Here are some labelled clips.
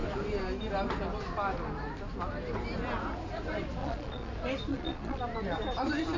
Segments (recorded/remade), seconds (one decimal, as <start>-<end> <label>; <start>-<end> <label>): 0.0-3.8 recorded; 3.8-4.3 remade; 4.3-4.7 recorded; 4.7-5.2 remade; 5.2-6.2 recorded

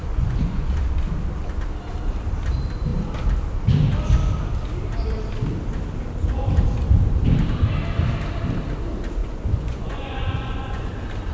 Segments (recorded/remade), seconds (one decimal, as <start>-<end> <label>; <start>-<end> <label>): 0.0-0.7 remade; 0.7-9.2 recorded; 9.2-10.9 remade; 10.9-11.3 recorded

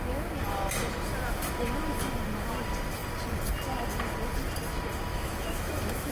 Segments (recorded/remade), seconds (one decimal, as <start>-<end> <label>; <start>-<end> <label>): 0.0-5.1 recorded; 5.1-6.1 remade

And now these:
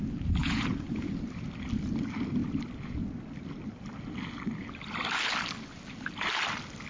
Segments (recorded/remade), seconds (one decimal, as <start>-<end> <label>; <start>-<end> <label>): 0.0-0.4 recorded; 0.4-1.1 remade; 1.1-6.9 recorded

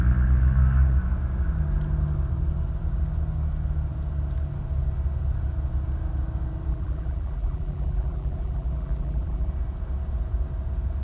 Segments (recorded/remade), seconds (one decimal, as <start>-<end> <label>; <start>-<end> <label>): 0.0-6.7 recorded; 6.7-9.5 remade; 9.5-11.0 recorded

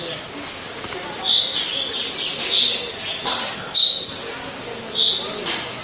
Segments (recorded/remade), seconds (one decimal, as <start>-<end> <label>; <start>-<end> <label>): 0.0-3.5 recorded; 3.5-4.1 remade; 4.1-5.8 recorded

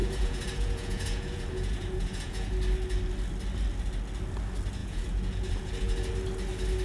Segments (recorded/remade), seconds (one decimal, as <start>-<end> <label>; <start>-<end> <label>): 0.0-2.5 remade; 2.5-4.8 recorded; 4.8-6.1 remade; 6.1-6.8 recorded